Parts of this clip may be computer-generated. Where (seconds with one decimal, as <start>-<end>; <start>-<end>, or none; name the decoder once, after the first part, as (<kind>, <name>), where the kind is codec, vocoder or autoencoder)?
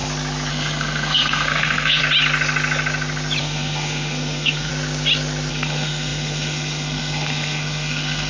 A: 0.5-2.0 (codec, SNAC); 3.4-4.7; 5.5-8.3